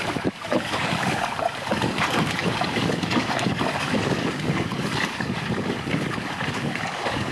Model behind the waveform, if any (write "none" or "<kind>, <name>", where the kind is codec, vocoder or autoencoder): codec, DAC